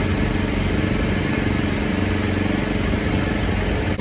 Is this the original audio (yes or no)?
yes